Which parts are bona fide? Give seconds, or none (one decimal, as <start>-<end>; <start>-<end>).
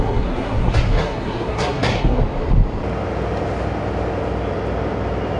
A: 2.2-5.4